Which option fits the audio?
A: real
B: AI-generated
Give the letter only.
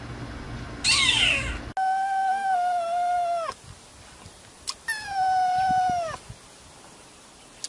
A